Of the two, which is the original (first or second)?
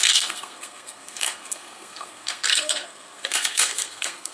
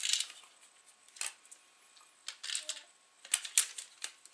second